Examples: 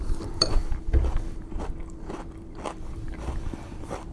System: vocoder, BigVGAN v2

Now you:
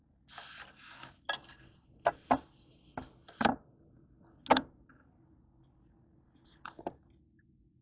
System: none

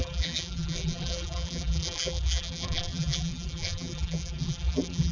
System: vocoder, BigVGAN v2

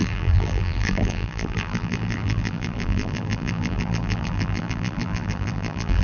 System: vocoder, BigVGAN v2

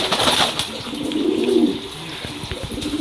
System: vocoder, BigVGAN v2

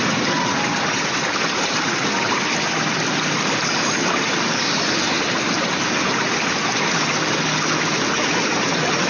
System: none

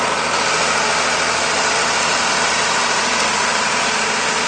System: vocoder, BigVGAN v2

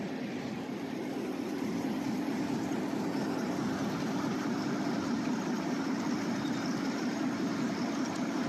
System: vocoder, BigVGAN v2